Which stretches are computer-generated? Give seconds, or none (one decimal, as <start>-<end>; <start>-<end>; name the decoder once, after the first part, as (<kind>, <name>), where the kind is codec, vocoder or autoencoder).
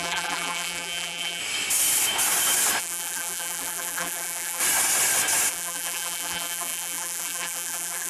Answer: 0.0-1.4 (vocoder, BigVGAN v2); 2.8-4.6; 5.5-8.1